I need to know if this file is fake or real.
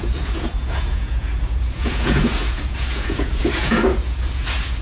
fake